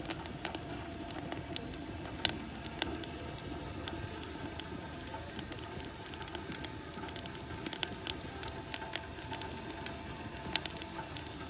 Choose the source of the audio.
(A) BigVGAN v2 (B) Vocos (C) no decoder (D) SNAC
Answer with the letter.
C